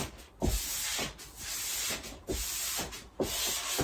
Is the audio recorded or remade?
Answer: recorded